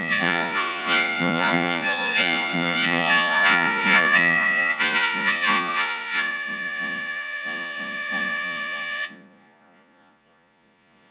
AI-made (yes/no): yes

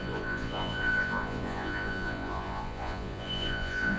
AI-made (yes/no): yes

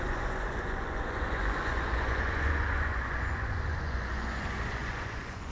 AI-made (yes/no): yes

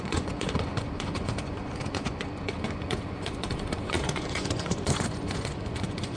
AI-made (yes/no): yes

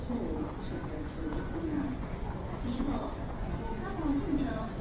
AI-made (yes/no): yes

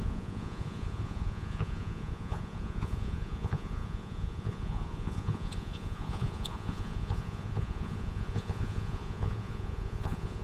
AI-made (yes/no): yes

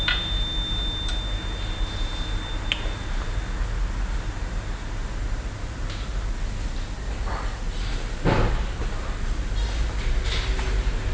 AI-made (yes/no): no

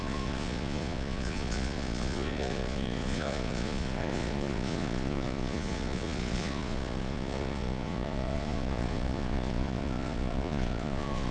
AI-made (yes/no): yes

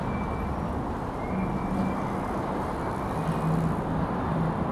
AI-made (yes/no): no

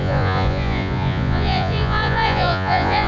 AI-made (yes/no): yes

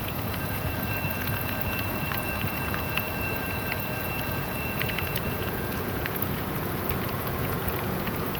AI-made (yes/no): yes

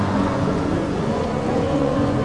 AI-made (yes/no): yes